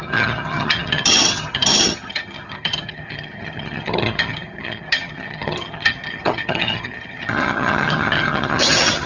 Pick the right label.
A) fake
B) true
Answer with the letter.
A